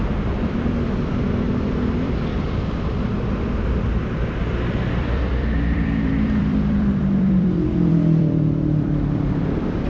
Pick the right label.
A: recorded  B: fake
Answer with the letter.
B